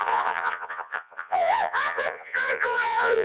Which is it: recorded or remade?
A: remade